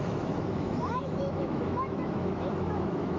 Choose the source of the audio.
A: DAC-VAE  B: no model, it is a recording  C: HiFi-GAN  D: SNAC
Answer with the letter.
A